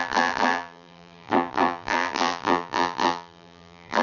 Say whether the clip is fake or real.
fake